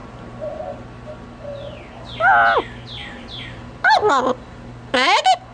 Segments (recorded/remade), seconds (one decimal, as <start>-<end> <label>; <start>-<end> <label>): 0.0-0.6 remade; 0.6-3.0 recorded; 3.0-4.1 remade; 4.1-5.5 recorded